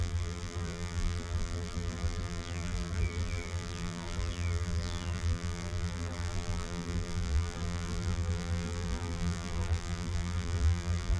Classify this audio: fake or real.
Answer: fake